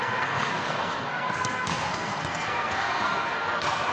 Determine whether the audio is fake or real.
fake